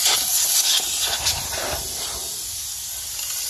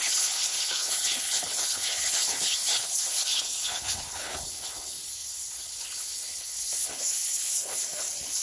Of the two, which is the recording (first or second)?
first